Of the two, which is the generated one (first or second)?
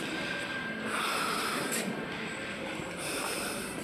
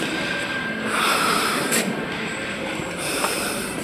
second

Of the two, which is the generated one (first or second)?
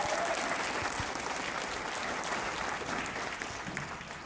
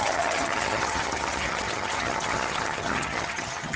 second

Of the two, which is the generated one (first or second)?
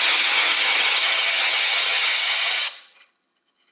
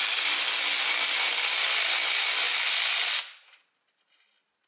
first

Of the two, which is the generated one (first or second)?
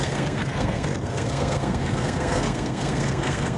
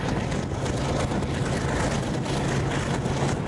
first